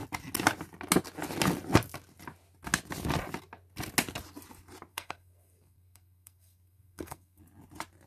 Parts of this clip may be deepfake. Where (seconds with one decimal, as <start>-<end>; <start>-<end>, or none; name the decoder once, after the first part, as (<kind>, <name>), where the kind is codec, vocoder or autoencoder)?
4.9-7.4 (codec, SNAC)